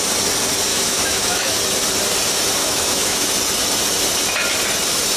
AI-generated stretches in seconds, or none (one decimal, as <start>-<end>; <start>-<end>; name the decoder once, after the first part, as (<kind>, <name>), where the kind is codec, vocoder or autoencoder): 0.7-1.6 (autoencoder, DAC-VAE); 2.6-3.3